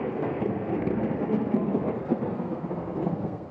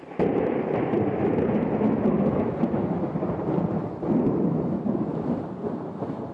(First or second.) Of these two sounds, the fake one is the first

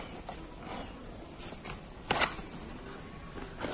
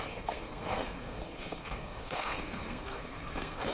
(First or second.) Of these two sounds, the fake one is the second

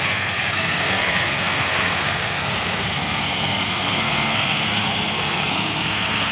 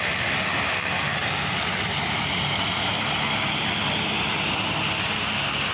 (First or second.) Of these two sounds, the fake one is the first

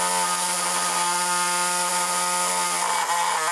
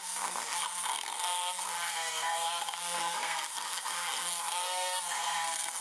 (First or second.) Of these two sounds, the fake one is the second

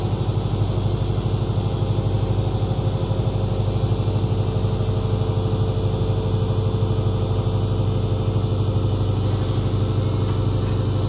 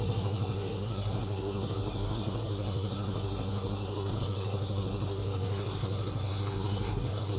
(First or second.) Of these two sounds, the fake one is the second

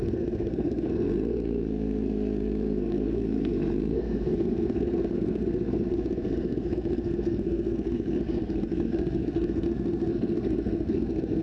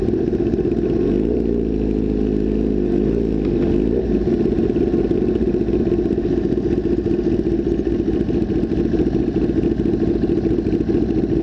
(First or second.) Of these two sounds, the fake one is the first